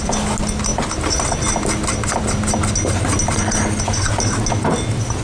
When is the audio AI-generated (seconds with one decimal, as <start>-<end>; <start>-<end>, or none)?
none